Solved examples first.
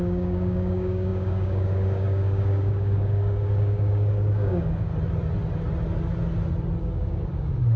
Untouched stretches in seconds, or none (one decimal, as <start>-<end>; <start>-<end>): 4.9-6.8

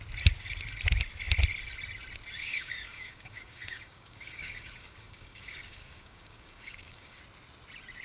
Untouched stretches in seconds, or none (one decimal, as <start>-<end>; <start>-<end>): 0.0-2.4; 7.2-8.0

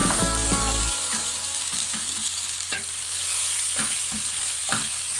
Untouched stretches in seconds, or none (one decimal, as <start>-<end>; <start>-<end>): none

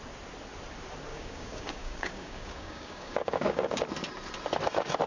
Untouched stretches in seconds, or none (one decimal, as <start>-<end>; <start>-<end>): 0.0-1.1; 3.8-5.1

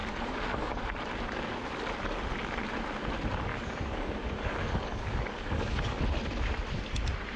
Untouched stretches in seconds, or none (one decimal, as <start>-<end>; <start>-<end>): 0.8-3.5; 6.0-7.4

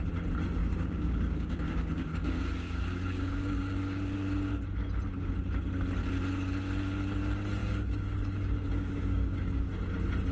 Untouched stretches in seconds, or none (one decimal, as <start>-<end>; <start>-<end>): 0.0-0.6; 4.5-7.6; 9.7-10.3

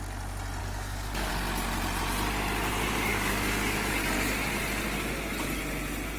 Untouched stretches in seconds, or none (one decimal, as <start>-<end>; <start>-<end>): 0.0-0.6; 1.3-3.1; 4.1-6.2